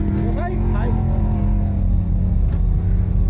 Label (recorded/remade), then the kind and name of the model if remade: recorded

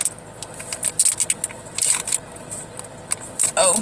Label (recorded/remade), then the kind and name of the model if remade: recorded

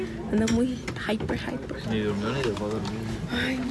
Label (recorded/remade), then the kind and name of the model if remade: recorded